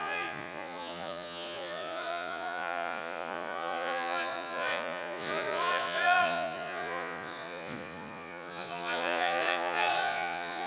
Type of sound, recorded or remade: remade